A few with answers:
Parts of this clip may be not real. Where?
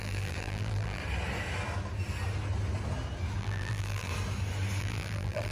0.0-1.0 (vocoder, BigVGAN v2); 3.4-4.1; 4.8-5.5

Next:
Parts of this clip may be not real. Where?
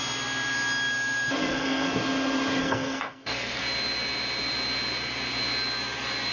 1.4-2.0 (codec, SNAC); 2.6-3.6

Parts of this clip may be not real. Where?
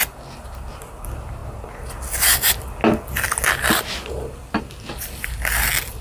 none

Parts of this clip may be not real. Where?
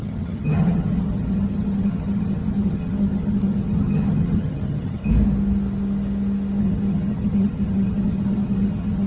0.0-5.0 (vocoder, HiFi-GAN); 6.6-9.1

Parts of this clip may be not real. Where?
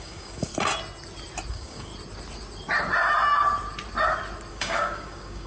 0.0-0.5 (codec, DAC); 1.5-1.9; 4.5-5.5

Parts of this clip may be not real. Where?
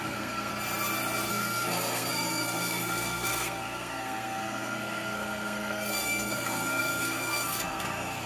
0.0-0.5 (codec, SNAC); 1.3-8.3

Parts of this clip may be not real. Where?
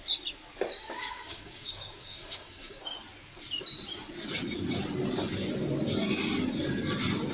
0.7-2.8 (codec, DAC)